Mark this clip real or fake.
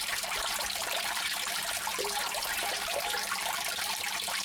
fake